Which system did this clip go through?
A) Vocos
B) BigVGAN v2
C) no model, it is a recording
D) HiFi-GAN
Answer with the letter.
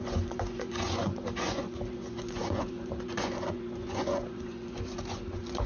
A